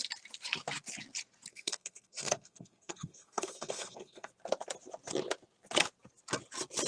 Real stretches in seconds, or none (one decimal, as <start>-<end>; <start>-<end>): 0.0-1.5; 4.3-6.9

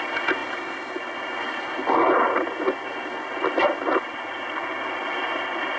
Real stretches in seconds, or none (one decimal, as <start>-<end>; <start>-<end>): 0.0-5.8

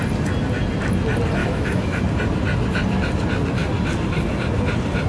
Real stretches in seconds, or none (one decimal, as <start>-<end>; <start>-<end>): 0.0-1.4; 2.0-5.1

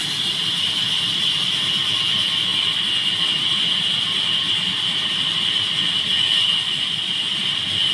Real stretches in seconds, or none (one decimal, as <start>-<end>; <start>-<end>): 0.0-7.9

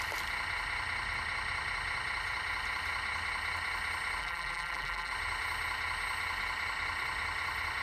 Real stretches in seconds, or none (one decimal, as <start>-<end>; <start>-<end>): 0.0-4.2; 5.1-7.8

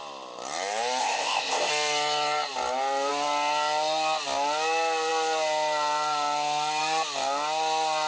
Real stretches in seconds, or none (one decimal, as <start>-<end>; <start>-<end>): 0.0-1.0; 1.7-8.1

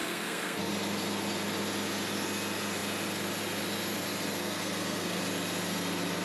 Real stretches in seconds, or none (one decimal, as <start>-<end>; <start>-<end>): 0.7-4.4; 5.2-6.2